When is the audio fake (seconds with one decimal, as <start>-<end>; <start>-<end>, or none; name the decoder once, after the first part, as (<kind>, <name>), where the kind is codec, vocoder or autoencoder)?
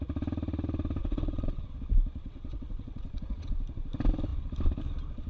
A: 1.0-1.7 (vocoder, WaveNeXt); 2.2-3.5